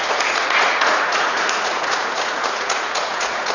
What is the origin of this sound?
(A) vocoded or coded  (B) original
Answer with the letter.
A